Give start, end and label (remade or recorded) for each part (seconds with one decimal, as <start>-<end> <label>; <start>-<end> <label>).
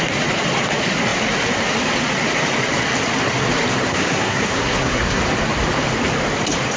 0.0-3.9 recorded; 3.9-5.2 remade; 5.2-6.8 recorded